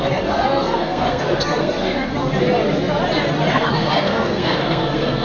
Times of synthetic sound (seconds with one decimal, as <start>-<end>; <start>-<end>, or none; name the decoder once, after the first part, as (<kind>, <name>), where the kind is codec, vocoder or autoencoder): 0.0-2.1 (codec, SNAC); 3.5-5.2